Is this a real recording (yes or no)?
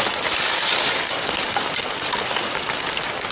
yes